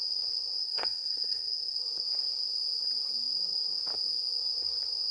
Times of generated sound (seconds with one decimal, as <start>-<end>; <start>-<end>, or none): 0.6-1.8